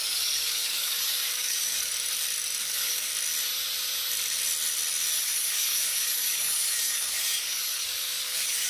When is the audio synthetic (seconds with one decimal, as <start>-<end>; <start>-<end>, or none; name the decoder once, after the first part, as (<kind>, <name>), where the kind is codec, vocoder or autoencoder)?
0.0-1.9 (codec, DAC); 2.6-3.1; 5.2-8.7